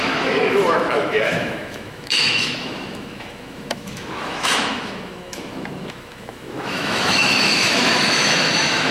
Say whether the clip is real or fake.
fake